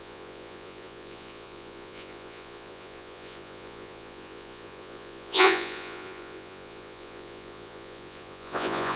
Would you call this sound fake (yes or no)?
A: yes